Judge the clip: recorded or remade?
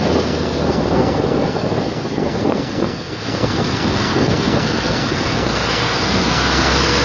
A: remade